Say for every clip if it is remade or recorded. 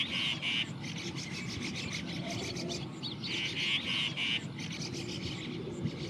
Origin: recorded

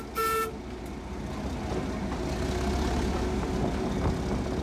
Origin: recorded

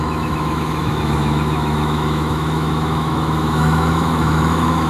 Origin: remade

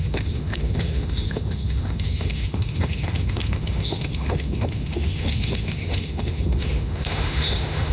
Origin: remade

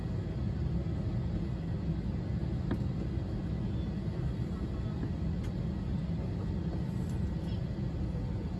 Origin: recorded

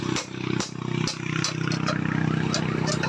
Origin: recorded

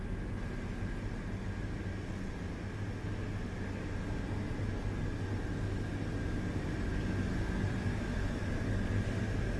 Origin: recorded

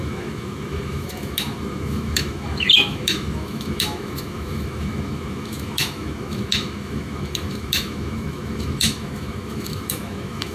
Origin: remade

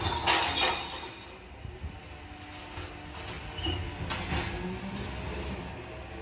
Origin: recorded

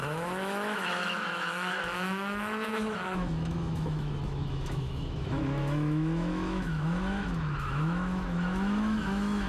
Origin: remade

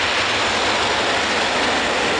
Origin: recorded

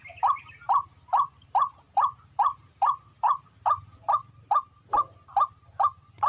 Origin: recorded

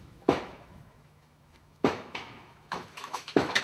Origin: remade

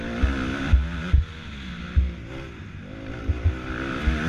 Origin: recorded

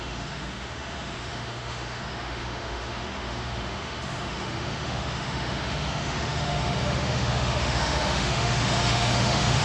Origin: remade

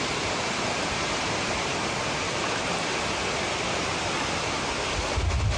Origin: recorded